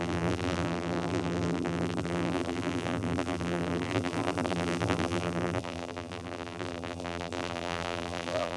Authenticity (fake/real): fake